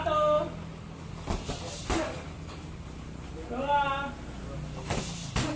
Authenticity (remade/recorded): recorded